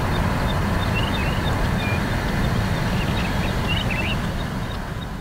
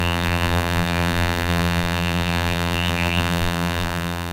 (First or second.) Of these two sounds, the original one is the first